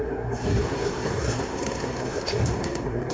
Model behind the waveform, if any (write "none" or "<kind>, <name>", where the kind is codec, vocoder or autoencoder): codec, SNAC